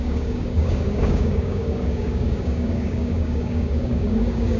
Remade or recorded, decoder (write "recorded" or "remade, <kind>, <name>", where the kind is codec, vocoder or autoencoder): remade, codec, DAC